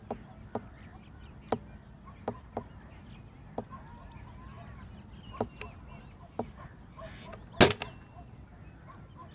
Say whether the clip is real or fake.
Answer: real